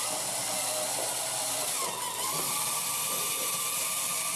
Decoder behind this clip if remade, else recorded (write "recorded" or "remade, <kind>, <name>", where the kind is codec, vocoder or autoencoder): remade, vocoder, BigVGAN v2